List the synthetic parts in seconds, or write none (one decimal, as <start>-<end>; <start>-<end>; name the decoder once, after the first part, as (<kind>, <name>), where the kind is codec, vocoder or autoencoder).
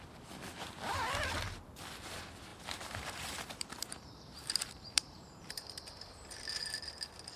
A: 2.5-5.9 (vocoder, BigVGAN v2)